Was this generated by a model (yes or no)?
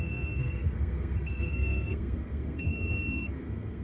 yes